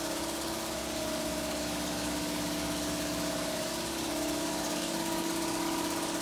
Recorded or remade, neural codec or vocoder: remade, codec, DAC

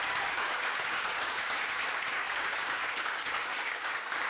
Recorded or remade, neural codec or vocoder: remade, codec, DAC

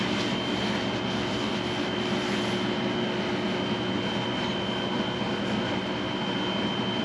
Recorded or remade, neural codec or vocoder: recorded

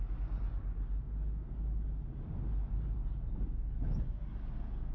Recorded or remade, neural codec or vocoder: recorded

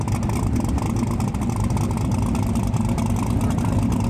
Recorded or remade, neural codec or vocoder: recorded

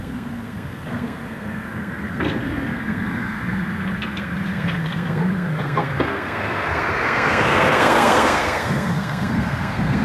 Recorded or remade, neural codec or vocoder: remade, codec, SNAC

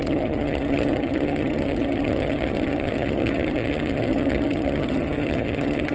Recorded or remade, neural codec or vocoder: remade, vocoder, HiFi-GAN